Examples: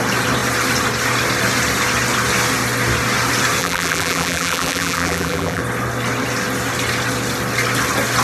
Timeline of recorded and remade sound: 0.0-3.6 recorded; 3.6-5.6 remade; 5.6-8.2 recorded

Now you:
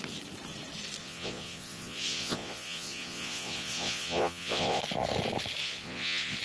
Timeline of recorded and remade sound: 0.0-1.0 recorded; 1.0-4.8 remade; 4.8-5.6 recorded; 5.6-6.4 remade

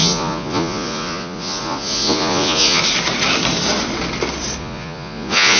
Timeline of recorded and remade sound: 0.0-2.8 remade; 2.8-4.6 recorded; 4.6-5.6 remade

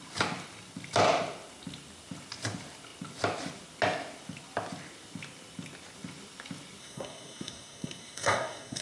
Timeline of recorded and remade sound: 0.0-6.8 recorded; 6.8-8.8 remade